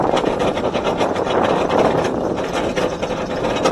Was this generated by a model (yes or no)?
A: no